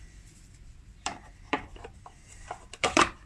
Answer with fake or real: fake